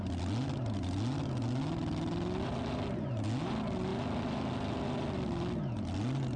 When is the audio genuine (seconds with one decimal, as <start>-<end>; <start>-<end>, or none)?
0.0-6.4